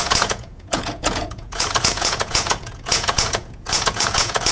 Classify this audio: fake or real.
fake